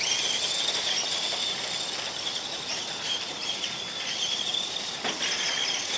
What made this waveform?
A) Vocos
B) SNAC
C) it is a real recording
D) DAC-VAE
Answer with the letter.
C